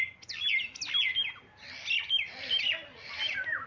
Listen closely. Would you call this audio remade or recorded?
recorded